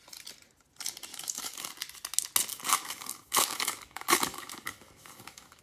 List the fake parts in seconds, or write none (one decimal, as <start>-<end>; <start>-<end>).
1.1-1.7; 2.5-5.6